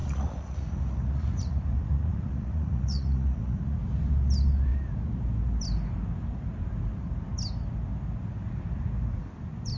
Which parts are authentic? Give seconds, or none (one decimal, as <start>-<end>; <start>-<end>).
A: 3.8-9.8